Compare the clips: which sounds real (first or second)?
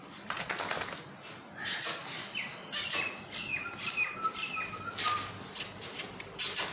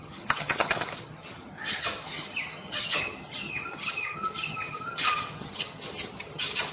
first